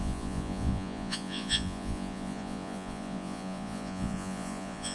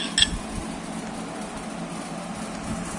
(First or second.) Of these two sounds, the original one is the second